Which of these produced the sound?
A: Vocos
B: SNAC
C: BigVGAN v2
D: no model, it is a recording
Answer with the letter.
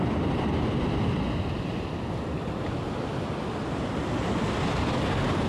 D